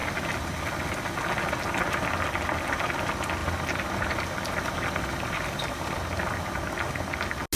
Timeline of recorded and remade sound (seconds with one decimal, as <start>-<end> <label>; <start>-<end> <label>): 0.0-3.4 recorded; 3.4-6.3 remade; 6.3-7.6 recorded